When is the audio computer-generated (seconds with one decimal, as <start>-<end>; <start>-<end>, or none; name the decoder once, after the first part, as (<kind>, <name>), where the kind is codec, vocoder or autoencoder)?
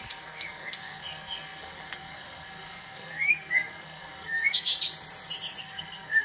0.0-4.7 (codec, SNAC); 5.6-6.2